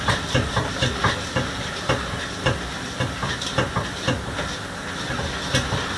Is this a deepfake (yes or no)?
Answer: yes